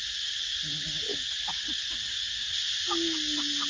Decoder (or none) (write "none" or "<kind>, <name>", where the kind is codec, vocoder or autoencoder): none